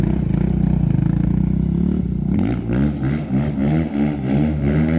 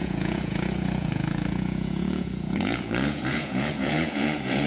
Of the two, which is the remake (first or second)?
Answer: second